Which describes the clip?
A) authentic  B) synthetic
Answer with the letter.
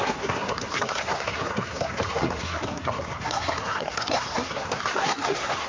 B